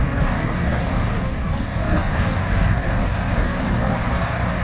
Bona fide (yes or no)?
no